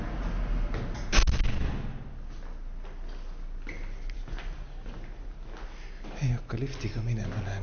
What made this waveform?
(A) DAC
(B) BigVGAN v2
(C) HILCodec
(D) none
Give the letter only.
D